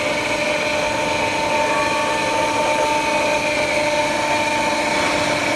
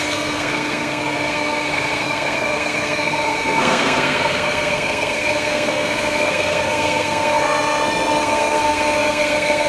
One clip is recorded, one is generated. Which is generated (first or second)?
second